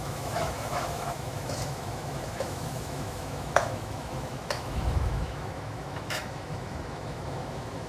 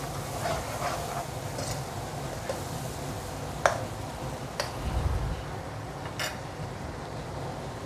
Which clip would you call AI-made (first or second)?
first